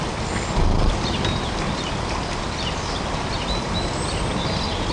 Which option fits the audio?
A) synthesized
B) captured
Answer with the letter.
B